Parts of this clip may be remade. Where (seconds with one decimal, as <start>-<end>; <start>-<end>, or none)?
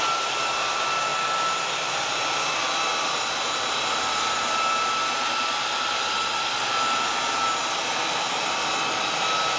none